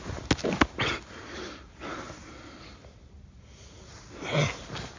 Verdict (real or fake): real